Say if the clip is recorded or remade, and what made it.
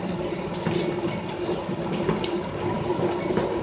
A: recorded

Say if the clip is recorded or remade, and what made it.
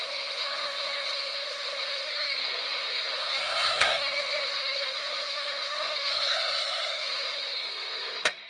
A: remade, codec, SNAC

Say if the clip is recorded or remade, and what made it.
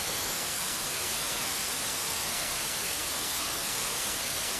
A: remade, codec, SNAC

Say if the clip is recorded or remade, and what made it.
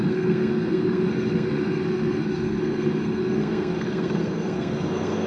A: remade, codec, SNAC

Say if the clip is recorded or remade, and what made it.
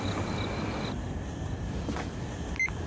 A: recorded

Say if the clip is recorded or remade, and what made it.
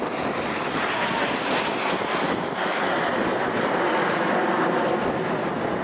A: recorded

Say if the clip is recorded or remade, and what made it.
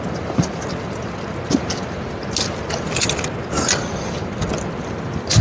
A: recorded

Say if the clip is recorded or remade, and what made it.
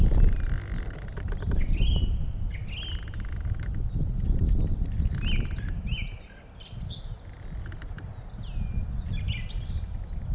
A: recorded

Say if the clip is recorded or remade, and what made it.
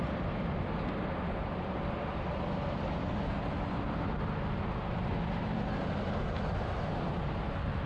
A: recorded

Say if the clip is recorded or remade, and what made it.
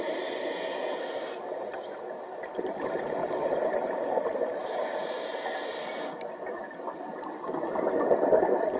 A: recorded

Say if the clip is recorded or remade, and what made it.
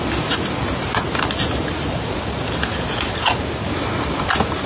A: recorded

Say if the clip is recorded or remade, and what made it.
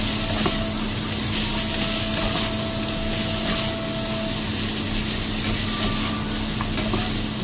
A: recorded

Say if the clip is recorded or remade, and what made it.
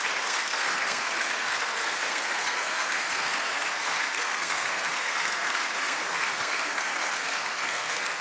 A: remade, codec, SNAC